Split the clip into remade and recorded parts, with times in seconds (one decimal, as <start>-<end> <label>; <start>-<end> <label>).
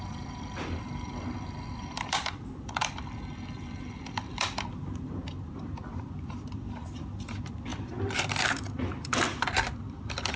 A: 0.0-10.4 remade